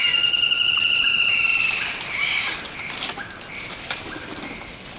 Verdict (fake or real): real